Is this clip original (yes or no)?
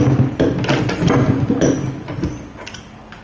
yes